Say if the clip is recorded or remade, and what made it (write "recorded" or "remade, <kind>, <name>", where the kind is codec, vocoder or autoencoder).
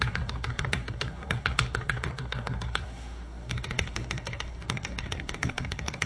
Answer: remade, codec, SNAC